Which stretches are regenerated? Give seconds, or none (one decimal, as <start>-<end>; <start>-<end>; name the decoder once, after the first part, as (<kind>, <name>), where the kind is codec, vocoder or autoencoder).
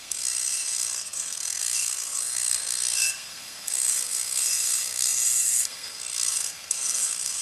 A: 0.0-7.4 (codec, SNAC)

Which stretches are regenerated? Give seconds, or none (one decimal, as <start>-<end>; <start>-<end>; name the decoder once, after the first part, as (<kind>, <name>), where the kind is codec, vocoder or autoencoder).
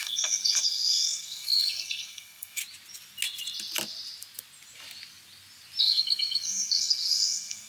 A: 0.0-2.6 (codec, SNAC); 5.8-7.7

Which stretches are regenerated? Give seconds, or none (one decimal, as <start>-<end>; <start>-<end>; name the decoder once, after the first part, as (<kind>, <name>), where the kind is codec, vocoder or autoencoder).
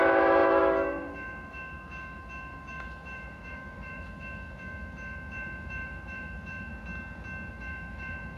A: 0.0-6.7 (autoencoder, DAC-VAE); 7.5-8.4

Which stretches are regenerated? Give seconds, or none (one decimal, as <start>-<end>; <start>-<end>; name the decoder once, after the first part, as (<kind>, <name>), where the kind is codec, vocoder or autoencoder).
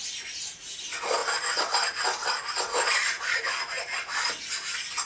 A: 2.7-4.1 (vocoder, BigVGAN v2)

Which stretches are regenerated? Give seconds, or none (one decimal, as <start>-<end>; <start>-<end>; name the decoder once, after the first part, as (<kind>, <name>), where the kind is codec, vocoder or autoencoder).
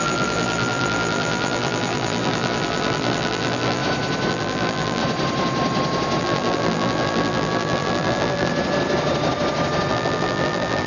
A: 0.0-3.8 (vocoder, BigVGAN v2); 4.3-5.0; 6.2-8.5; 9.9-10.9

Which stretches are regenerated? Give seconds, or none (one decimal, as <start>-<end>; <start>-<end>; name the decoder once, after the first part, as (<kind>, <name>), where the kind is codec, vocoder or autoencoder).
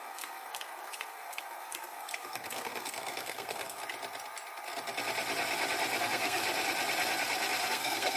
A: 0.0-3.8 (codec, SNAC); 6.0-6.4; 7.7-8.2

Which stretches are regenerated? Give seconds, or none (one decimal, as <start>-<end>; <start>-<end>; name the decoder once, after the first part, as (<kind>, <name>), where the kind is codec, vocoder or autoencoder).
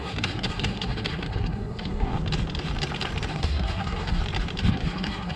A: 0.0-2.1 (codec, SNAC); 3.3-4.2; 4.7-5.4